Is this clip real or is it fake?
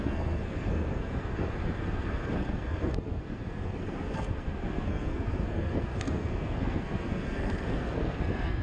fake